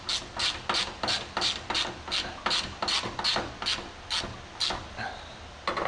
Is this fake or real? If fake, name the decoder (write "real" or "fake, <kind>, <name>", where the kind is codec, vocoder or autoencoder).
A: real